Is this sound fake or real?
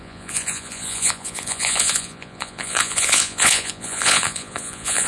fake